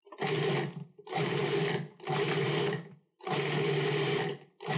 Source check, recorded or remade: recorded